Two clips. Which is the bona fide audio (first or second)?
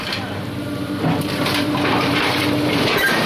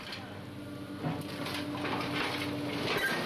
second